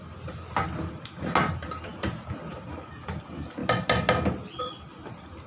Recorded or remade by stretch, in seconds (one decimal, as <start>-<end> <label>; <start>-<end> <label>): 0.0-5.5 recorded

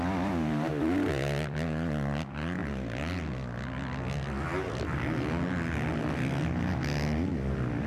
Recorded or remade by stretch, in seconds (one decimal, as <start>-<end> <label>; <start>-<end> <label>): 0.0-7.9 recorded

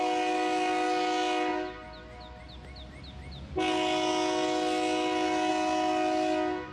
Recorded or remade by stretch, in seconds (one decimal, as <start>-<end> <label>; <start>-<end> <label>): 0.0-6.7 recorded

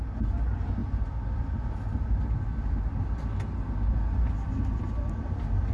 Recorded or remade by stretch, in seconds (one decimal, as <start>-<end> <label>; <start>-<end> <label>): 0.0-5.7 recorded

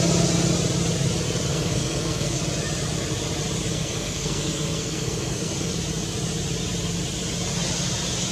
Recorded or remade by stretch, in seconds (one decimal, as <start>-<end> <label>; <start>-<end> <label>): 0.0-1.5 recorded; 1.5-2.4 remade; 2.4-3.7 recorded; 3.7-5.7 remade; 5.7-8.3 recorded

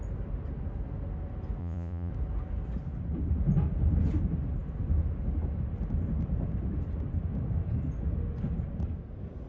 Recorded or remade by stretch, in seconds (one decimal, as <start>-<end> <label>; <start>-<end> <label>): 0.0-1.6 recorded; 1.6-2.1 remade; 2.1-9.5 recorded

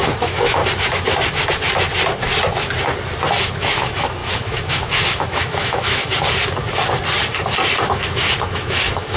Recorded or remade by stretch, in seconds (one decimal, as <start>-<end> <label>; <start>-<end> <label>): 0.0-0.6 remade; 0.6-3.4 recorded; 3.4-6.0 remade; 6.0-7.9 recorded; 7.9-9.2 remade